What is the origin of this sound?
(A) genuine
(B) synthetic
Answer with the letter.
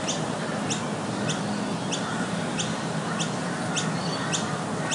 A